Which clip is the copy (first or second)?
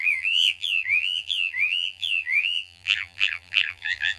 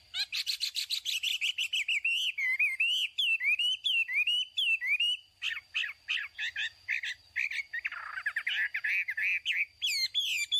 first